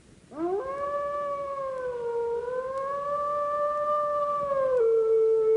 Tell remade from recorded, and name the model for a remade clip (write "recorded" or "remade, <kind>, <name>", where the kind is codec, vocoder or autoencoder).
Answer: recorded